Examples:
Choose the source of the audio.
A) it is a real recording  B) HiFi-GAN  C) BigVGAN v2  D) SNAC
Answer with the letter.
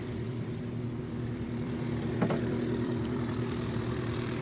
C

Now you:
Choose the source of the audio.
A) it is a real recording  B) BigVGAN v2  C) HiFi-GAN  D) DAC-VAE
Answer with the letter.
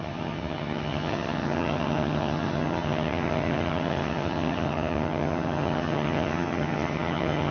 C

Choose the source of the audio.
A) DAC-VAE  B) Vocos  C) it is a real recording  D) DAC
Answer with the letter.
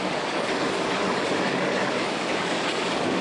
D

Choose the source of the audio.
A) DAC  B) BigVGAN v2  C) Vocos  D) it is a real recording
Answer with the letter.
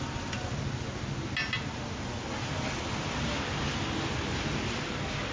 D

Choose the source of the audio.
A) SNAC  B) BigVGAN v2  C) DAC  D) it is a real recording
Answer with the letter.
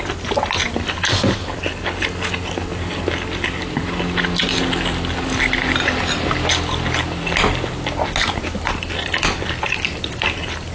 D